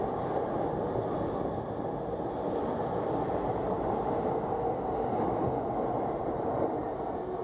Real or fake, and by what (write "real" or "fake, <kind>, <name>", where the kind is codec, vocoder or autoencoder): real